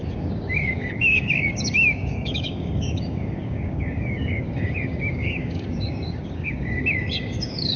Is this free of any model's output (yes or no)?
no